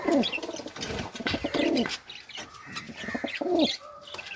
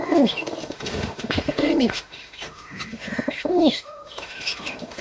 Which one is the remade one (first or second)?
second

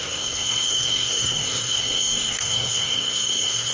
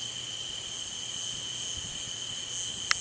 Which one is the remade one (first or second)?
first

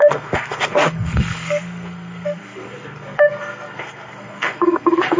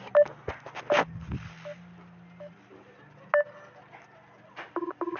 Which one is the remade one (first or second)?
first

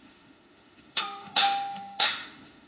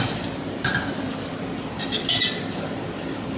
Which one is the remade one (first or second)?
first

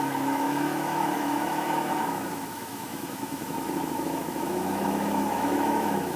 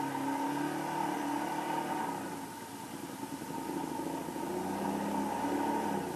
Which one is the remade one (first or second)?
first